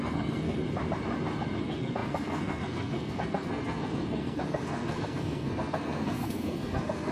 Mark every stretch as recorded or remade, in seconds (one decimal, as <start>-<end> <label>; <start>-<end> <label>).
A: 0.0-0.6 remade; 0.6-1.6 recorded; 1.6-7.1 remade